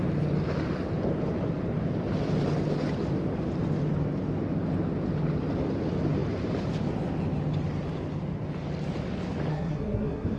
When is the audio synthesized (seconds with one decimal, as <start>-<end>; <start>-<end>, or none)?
9.5-10.4